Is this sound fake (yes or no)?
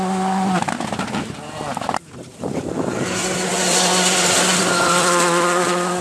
no